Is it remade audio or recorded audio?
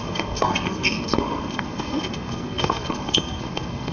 remade